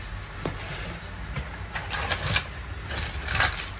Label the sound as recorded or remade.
recorded